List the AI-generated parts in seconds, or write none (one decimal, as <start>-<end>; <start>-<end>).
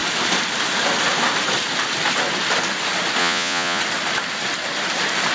3.2-3.8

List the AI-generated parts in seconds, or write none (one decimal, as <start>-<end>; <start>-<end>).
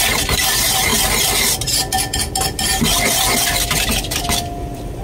0.0-0.9; 3.9-5.0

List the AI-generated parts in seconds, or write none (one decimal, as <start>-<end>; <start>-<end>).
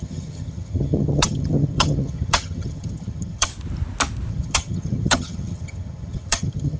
0.0-3.5; 4.3-6.8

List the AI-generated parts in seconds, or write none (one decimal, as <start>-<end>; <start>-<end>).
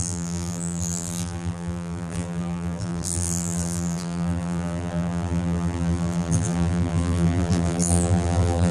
0.0-8.7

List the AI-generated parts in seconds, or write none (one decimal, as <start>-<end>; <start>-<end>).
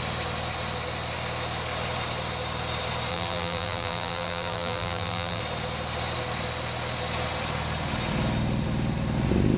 3.1-5.4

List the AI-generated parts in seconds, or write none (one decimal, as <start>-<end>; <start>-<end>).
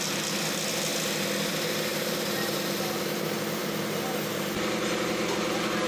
1.9-3.2; 3.6-4.5